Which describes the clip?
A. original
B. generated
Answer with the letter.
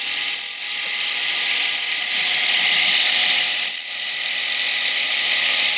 A